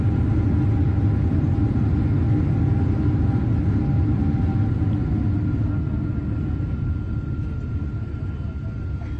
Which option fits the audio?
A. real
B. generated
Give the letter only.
A